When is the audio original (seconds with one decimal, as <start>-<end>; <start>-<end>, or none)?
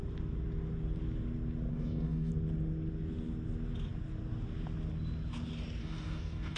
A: 0.0-1.7; 2.3-5.8